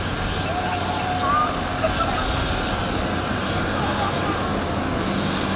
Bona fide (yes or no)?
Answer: yes